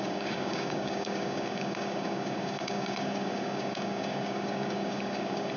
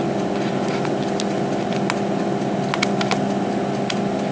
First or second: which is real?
second